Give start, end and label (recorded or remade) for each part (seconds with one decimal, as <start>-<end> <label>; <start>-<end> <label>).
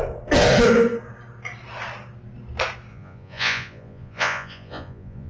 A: 0.0-2.9 recorded; 2.9-5.3 remade